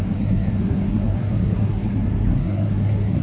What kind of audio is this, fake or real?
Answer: fake